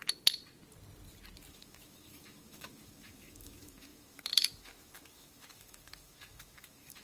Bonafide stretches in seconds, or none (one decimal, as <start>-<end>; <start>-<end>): 0.0-1.5